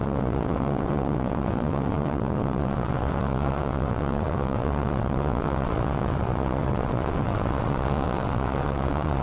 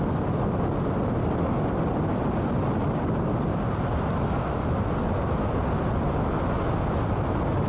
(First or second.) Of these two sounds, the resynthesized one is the first